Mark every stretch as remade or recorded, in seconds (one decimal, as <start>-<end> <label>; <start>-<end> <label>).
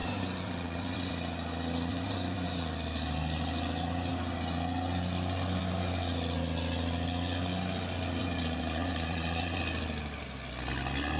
0.0-1.1 remade; 1.1-1.9 recorded; 1.9-2.7 remade; 2.7-8.2 recorded; 8.2-9.6 remade; 9.6-11.2 recorded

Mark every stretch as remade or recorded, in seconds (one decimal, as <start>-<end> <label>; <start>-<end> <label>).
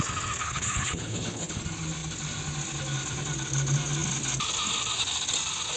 0.0-0.4 recorded; 0.4-1.6 remade; 1.6-5.8 recorded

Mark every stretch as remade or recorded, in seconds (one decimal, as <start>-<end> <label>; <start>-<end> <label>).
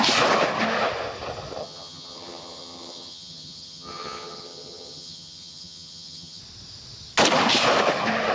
0.0-1.6 recorded; 1.6-6.4 remade; 6.4-8.3 recorded